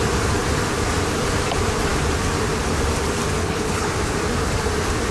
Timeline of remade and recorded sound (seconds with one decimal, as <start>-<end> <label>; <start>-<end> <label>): 0.0-3.4 recorded; 3.4-3.9 remade; 3.9-5.1 recorded